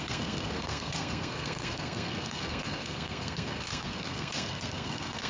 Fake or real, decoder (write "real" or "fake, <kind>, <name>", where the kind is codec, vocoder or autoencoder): fake, codec, SNAC